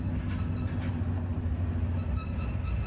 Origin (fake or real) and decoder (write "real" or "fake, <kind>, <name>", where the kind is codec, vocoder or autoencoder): real